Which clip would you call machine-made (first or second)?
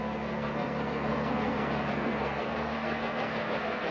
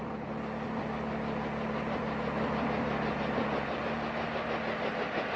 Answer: first